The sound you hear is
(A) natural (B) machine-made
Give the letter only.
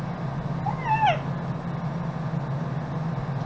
A